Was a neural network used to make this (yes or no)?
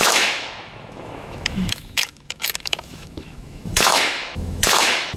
yes